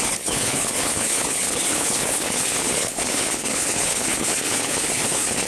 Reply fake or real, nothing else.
fake